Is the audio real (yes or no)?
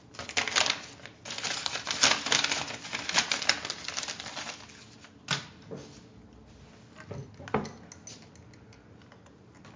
yes